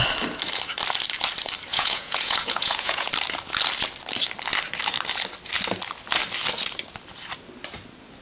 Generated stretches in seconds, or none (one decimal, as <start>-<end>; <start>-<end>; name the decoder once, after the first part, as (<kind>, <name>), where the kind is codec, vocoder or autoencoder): 1.7-3.1 (vocoder, Vocos)